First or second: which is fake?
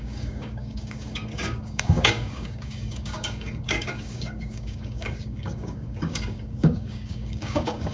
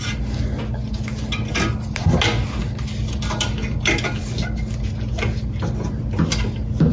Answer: first